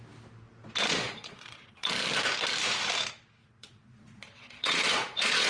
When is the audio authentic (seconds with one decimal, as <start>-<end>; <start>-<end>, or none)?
0.0-0.9; 1.9-3.4